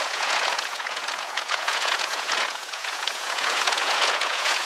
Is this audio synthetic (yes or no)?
yes